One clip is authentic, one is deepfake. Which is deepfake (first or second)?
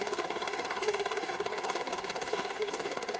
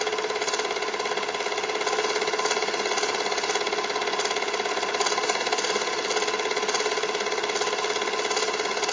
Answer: first